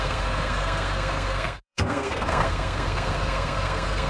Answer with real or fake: fake